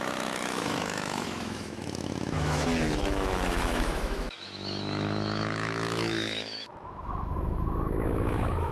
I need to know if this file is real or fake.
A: fake